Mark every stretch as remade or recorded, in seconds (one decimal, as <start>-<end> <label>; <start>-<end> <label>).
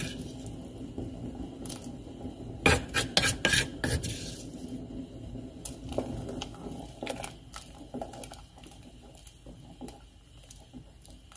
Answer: 0.0-11.4 recorded